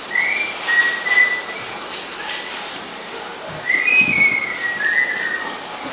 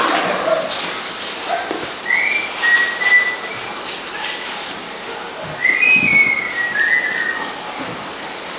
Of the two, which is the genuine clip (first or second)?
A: second